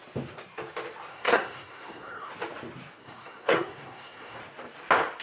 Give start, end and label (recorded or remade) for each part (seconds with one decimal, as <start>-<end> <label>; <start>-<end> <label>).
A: 0.0-1.1 recorded; 1.1-2.3 remade; 2.3-3.0 recorded; 3.0-4.4 remade; 4.4-5.2 recorded

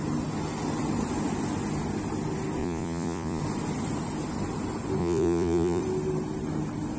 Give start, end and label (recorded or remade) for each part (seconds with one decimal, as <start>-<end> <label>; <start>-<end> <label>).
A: 0.0-2.6 recorded; 2.6-3.4 remade; 3.4-5.0 recorded; 5.0-5.8 remade; 5.8-7.0 recorded

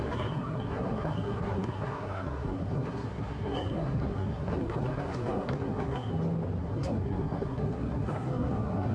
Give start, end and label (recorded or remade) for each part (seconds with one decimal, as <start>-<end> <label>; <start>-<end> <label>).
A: 0.0-6.1 remade; 6.1-6.6 recorded; 6.6-8.9 remade